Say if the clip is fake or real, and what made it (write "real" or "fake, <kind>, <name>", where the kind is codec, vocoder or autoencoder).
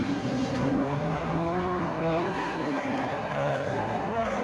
fake, codec, SNAC